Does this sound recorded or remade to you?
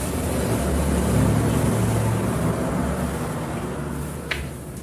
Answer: recorded